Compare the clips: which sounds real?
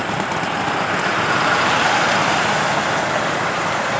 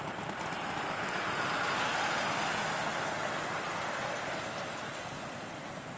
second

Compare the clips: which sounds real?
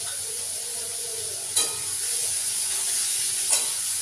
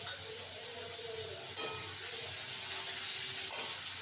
second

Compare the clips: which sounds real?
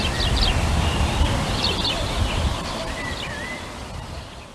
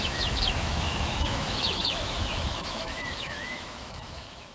first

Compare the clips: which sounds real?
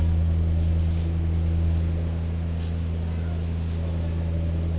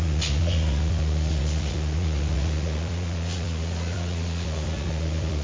first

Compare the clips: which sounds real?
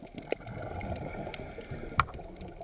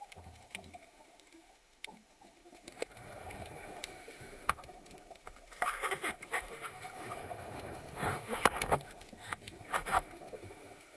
first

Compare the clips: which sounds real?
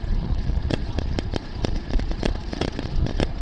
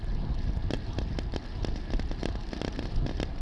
second